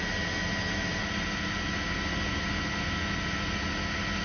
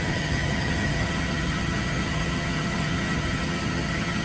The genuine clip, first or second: first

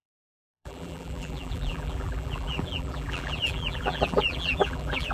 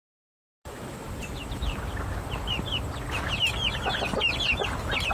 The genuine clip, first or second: second